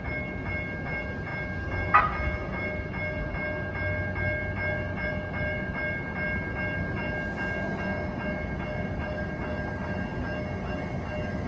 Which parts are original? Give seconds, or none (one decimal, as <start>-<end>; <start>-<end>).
0.0-11.5